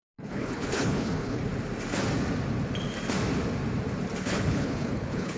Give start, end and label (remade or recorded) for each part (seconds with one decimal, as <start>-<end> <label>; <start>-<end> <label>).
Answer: 0.0-1.4 remade; 1.4-4.2 recorded; 4.2-5.4 remade